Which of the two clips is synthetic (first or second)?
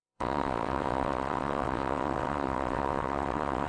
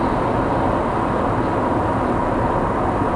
first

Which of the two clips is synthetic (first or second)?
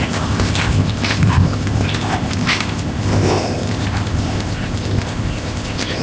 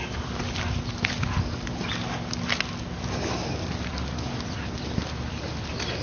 first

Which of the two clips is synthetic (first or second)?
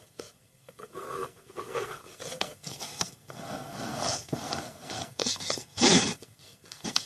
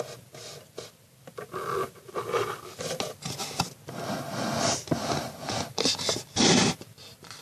first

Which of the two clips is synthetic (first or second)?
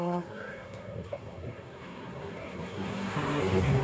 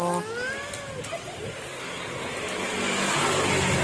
first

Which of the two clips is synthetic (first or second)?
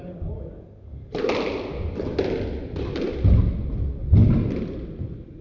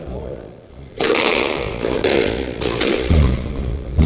second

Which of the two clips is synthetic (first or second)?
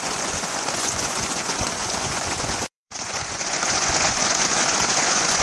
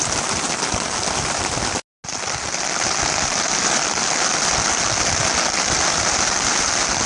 first